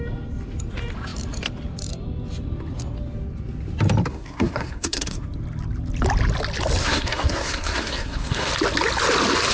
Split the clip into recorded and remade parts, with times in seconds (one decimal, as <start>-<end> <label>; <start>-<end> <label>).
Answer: 0.0-4.1 recorded; 4.1-5.2 remade; 5.2-6.8 recorded; 6.8-8.5 remade; 8.5-9.5 recorded